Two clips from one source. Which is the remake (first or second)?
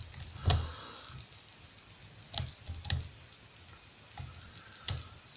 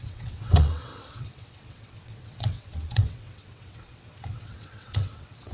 second